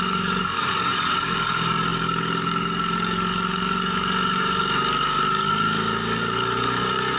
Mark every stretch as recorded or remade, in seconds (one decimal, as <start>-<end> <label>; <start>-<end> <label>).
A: 0.0-7.2 remade